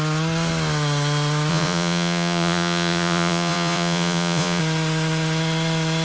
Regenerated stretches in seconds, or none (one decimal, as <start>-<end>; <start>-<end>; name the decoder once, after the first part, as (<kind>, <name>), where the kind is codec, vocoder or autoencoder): 1.5-4.6 (vocoder, Vocos)